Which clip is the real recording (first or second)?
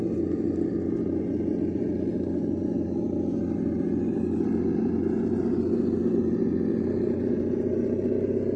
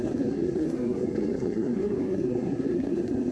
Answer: first